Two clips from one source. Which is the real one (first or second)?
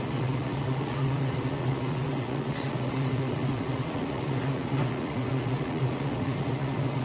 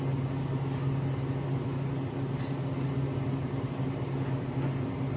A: second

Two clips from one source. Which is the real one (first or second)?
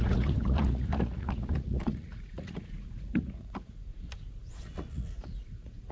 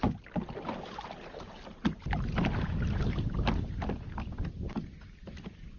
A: second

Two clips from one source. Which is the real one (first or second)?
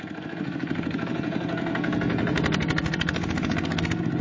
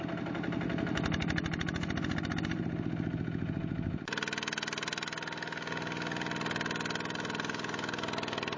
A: second